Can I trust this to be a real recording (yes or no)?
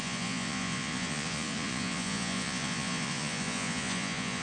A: no